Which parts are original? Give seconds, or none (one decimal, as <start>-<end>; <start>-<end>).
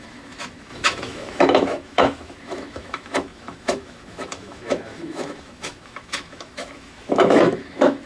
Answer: none